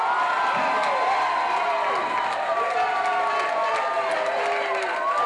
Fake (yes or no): no